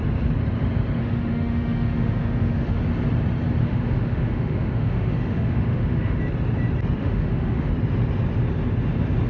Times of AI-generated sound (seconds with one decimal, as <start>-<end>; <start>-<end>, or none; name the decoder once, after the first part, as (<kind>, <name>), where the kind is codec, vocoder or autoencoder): 1.0-2.8 (autoencoder, DAC-VAE); 3.6-6.2; 7.0-7.7

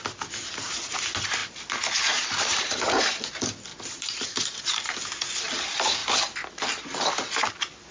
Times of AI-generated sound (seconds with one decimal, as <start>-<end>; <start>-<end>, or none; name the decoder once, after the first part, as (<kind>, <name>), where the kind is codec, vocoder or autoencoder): 3.7-5.4 (vocoder, BigVGAN v2)

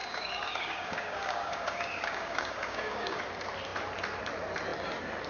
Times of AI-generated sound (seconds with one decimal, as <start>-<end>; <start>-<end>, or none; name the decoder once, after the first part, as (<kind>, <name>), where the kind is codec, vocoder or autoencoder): 0.0-3.2 (codec, DAC)

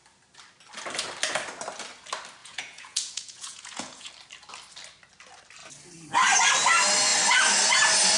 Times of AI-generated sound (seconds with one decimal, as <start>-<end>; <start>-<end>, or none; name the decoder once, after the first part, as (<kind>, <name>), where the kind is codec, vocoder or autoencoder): 2.4-4.1 (vocoder, Vocos)

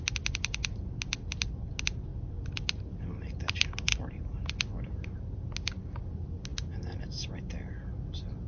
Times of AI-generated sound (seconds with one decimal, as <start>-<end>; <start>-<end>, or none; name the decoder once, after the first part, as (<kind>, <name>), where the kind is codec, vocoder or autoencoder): none

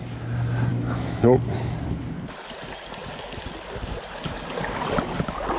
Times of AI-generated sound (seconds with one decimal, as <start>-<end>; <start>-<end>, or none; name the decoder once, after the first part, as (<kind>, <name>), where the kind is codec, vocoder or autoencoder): 0.7-1.2 (autoencoder, DAC-VAE)

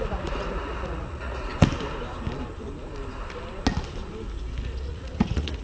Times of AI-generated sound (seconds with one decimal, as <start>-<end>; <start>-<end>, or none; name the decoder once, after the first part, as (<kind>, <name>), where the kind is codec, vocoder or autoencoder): 0.0-1.5 (vocoder, Vocos); 4.9-5.6

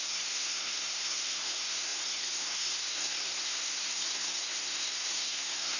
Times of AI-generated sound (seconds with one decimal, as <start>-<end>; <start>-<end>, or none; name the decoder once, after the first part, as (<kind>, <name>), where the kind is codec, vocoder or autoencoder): 0.0-5.8 (codec, SNAC)